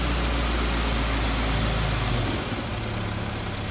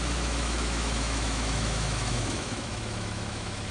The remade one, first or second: second